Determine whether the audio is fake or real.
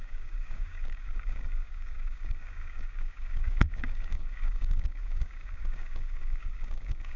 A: fake